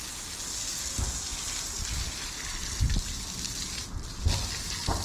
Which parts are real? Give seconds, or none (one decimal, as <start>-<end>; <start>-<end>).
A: 0.0-5.0